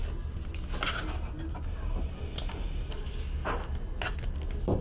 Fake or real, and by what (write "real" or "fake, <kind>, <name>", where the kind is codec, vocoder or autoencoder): real